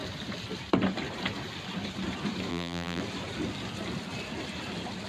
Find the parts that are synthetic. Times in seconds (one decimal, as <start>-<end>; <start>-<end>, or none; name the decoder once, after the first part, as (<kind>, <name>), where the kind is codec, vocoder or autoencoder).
2.5-3.0 (vocoder, BigVGAN v2)